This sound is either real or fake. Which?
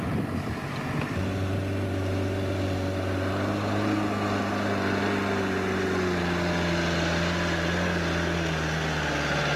real